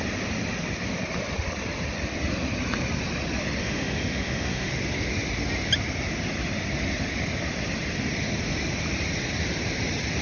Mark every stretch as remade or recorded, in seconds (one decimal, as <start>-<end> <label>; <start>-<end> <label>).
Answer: 0.0-3.6 recorded; 3.6-4.7 remade; 4.7-10.2 recorded